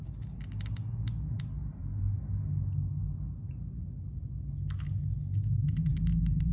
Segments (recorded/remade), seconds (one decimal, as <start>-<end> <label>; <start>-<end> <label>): 0.0-1.6 recorded; 1.6-2.2 remade; 2.2-5.9 recorded; 5.9-6.5 remade